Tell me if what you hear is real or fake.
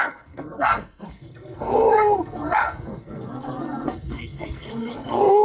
fake